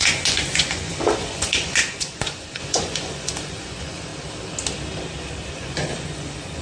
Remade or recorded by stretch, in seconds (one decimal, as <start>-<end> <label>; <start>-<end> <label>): 0.0-4.1 remade; 4.1-5.5 recorded; 5.5-6.6 remade